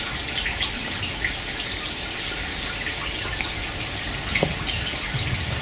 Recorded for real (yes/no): yes